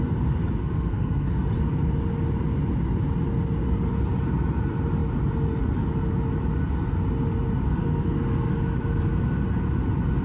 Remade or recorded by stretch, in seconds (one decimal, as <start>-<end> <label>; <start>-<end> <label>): 0.0-0.6 recorded; 0.6-1.5 remade; 1.5-7.8 recorded; 7.8-8.5 remade; 8.5-10.2 recorded